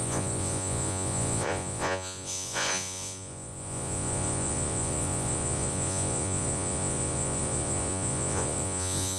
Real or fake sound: fake